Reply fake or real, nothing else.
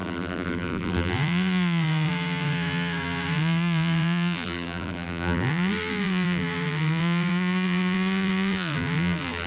fake